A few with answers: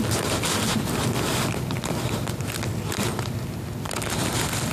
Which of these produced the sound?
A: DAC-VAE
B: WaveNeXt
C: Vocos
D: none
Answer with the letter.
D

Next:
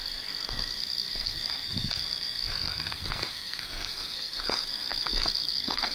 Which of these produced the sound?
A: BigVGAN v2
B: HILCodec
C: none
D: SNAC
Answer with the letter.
D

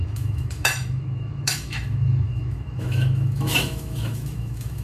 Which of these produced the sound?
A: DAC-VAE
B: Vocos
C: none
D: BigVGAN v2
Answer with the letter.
A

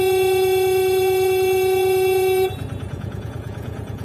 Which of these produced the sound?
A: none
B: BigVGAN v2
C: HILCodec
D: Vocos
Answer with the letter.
D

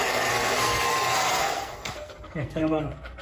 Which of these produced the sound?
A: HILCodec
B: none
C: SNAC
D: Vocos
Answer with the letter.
C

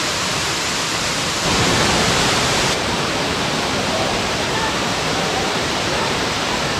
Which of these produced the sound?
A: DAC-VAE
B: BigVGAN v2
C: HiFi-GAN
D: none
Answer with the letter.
B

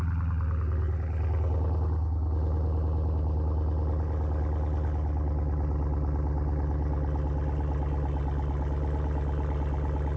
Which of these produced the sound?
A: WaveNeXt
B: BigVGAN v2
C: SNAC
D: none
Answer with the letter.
D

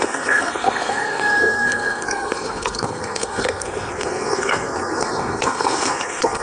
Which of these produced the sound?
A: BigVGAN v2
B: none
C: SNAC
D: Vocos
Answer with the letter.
C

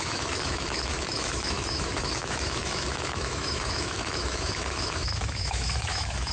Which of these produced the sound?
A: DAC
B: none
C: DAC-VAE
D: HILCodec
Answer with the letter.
C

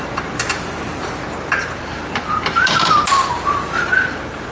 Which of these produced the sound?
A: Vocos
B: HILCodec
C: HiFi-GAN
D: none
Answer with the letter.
D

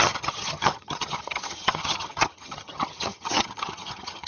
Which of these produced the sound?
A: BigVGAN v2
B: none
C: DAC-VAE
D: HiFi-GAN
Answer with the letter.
D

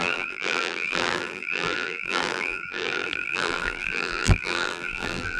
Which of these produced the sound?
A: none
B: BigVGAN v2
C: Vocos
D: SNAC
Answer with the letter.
B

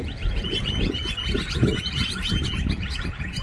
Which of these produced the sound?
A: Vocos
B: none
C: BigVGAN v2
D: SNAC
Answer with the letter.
A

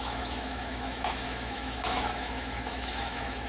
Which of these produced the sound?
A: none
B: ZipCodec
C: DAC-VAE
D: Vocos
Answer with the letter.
C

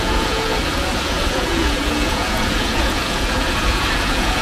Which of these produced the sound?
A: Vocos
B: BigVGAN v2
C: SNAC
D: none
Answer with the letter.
A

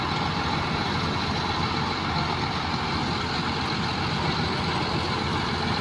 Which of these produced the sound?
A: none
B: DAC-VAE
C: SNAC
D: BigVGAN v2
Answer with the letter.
A